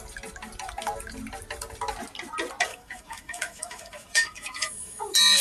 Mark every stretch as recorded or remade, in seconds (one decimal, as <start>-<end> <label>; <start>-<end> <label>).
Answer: 0.0-2.7 recorded; 2.7-5.0 remade; 5.0-5.4 recorded